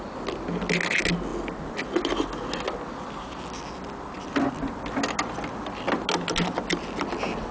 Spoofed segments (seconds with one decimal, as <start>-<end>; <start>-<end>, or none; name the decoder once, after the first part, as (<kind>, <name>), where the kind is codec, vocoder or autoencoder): none